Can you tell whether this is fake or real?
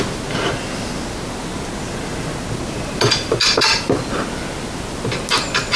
real